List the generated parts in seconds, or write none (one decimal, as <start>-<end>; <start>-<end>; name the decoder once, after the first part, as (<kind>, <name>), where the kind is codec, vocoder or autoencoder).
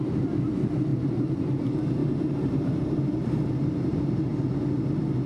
0.9-1.6 (vocoder, BigVGAN v2); 2.0-3.5